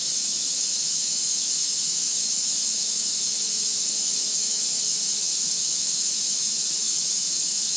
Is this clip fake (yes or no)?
yes